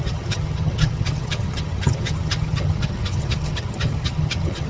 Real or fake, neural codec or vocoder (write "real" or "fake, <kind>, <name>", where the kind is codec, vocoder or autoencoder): fake, vocoder, HiFi-GAN